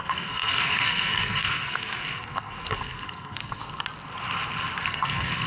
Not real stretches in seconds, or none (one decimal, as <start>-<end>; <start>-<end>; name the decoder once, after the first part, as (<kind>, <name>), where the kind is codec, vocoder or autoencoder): 0.0-3.6 (codec, SNAC); 4.8-5.5

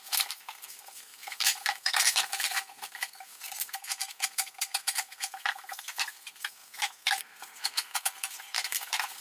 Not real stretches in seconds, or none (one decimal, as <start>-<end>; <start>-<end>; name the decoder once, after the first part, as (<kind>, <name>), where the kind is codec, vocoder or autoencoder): 0.0-9.2 (codec, SNAC)

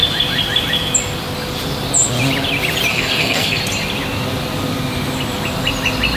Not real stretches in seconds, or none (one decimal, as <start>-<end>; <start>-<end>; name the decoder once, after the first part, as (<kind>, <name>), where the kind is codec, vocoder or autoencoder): 2.9-3.6 (codec, SNAC)

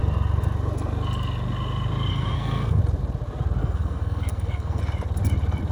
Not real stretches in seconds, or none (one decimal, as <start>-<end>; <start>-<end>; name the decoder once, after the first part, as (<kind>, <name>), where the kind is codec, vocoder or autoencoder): 2.1-2.8 (codec, SNAC); 3.6-4.8

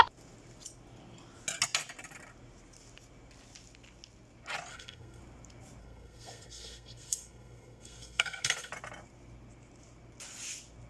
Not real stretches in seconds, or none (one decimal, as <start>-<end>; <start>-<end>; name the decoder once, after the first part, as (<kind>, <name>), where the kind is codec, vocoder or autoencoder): 4.7-5.2 (codec, SNAC); 5.8-8.7